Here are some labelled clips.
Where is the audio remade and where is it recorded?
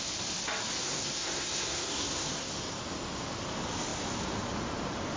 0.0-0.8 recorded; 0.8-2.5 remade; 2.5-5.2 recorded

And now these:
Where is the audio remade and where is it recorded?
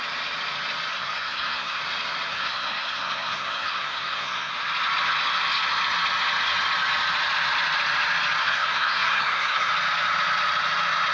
0.0-0.9 recorded; 0.9-1.8 remade; 1.8-2.3 recorded; 2.3-4.5 remade; 4.5-8.4 recorded; 8.4-9.7 remade; 9.7-11.1 recorded